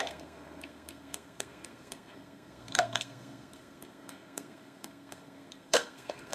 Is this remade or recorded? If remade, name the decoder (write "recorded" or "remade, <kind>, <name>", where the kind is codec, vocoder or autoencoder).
remade, codec, SNAC